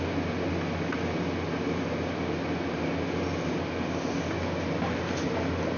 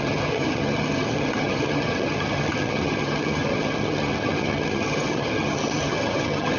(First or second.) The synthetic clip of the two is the second